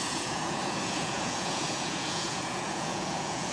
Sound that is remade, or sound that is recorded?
remade